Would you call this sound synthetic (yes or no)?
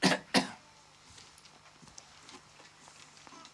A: no